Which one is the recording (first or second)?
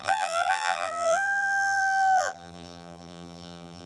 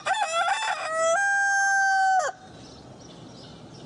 second